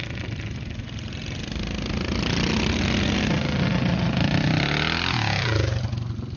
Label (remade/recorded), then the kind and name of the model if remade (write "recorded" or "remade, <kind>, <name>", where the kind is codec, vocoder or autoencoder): recorded